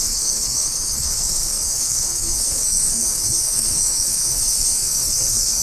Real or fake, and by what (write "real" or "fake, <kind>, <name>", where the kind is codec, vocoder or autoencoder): fake, codec, SNAC